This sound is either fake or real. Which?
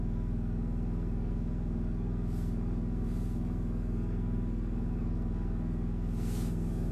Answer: fake